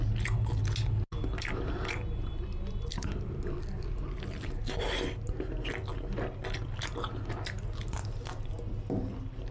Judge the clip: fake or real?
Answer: real